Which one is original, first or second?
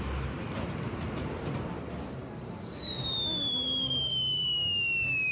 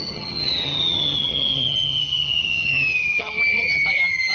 first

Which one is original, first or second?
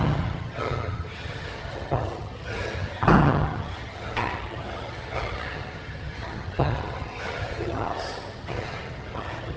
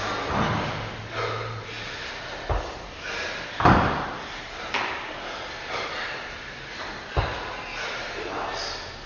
second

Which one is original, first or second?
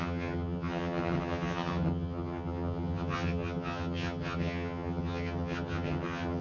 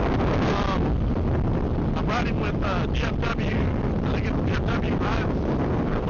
second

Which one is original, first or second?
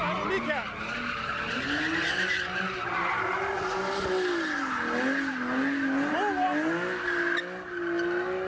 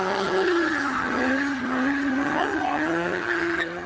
first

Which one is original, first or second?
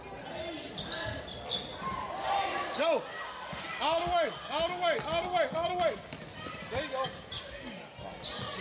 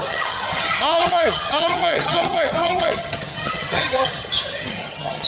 first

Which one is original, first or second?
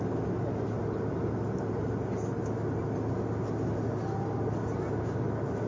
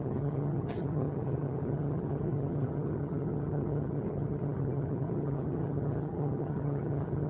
first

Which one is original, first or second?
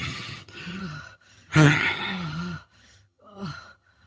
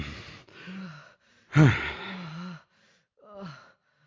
second